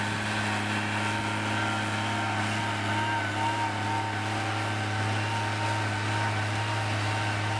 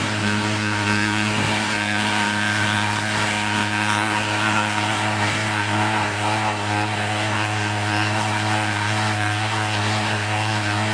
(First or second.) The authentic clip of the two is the first